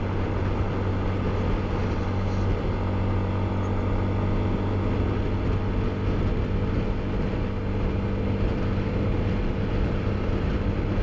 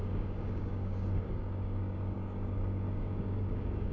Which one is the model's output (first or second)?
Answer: second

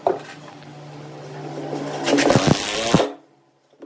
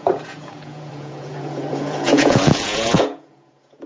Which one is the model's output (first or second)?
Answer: second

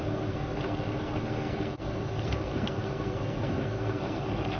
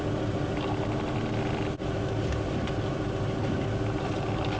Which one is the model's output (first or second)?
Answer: first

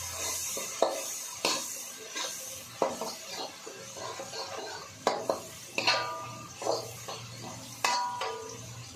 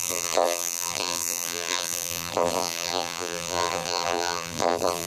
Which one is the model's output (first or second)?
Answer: second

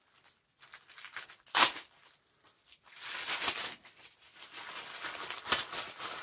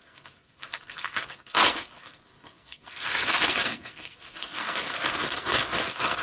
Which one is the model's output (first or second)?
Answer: second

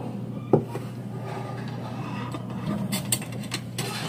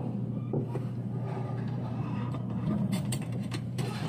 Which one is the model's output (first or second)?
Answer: second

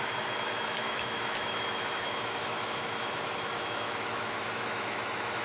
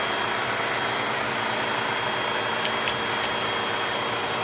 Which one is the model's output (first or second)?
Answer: first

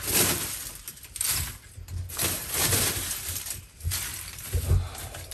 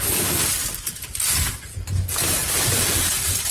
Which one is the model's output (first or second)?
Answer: second